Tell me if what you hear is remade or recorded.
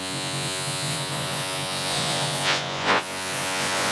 remade